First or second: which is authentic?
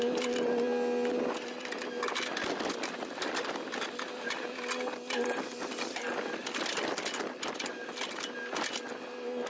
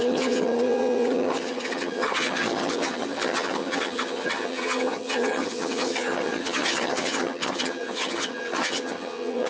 first